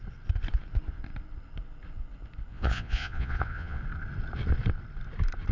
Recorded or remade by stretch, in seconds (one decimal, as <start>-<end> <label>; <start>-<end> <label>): 0.0-2.5 recorded; 2.5-3.8 remade; 3.8-5.5 recorded